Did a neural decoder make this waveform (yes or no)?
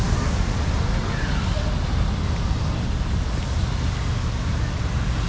no